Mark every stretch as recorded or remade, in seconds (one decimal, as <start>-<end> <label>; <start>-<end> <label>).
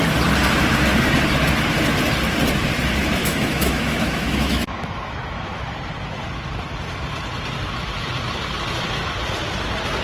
0.0-3.2 recorded; 3.2-5.8 remade; 5.8-10.0 recorded